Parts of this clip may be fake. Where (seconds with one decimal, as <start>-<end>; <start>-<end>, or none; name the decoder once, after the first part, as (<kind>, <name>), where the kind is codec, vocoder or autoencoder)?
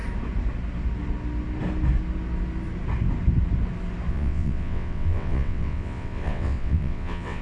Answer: 4.1-7.4 (vocoder, WaveNeXt)